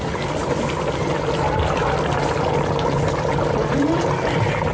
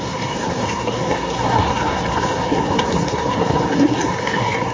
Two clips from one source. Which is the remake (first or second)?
second